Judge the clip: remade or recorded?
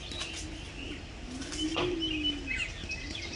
recorded